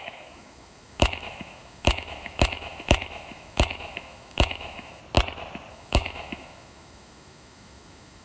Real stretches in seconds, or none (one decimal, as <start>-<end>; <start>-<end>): 5.0-5.7